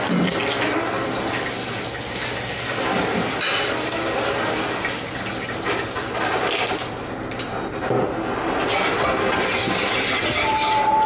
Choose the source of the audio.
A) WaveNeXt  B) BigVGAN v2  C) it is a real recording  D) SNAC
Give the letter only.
C